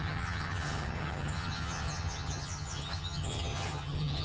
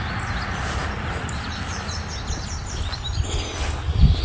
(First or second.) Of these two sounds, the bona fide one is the second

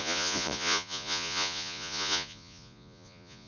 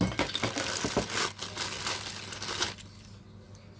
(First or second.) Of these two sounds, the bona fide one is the second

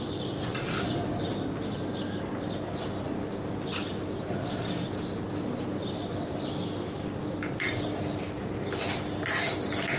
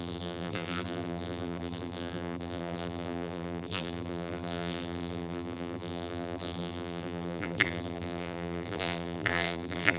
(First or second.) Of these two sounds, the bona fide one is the first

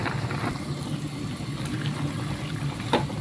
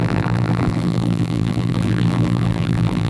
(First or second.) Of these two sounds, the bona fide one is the first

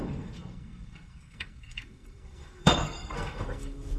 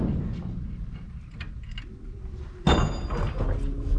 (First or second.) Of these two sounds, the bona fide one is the second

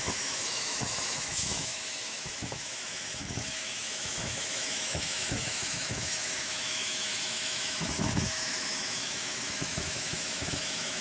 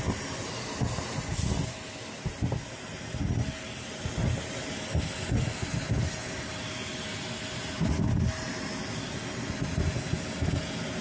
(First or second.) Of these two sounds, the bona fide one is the second